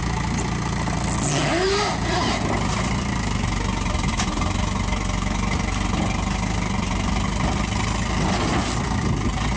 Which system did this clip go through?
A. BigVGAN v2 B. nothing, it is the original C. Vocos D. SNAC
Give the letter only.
B